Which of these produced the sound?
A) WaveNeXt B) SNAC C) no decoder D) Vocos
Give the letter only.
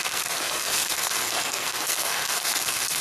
B